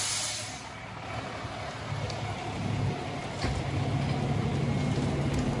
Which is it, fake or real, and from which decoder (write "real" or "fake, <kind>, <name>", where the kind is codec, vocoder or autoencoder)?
real